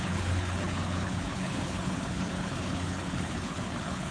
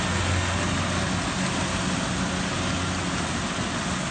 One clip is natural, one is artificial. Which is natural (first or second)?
second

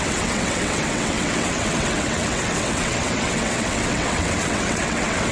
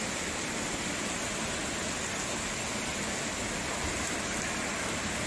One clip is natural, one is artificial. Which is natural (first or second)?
second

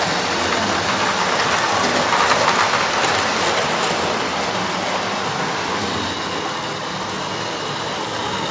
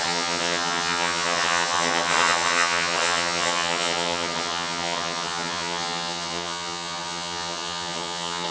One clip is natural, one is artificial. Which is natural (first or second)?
first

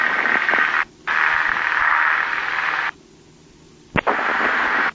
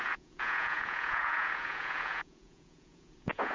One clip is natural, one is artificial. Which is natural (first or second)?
first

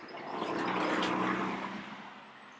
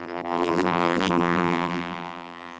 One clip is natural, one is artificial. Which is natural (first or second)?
first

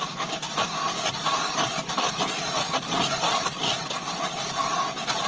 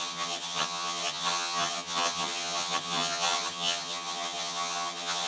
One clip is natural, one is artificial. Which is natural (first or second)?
first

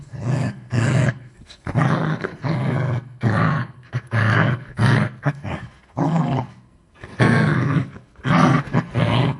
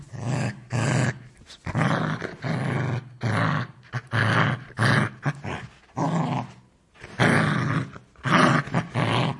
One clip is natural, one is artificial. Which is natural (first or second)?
second